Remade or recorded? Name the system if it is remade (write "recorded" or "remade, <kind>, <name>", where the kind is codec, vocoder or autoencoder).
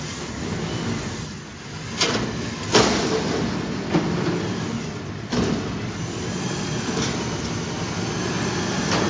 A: recorded